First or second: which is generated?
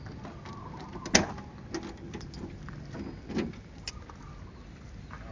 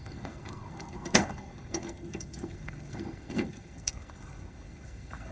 second